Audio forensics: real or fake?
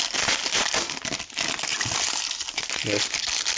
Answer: real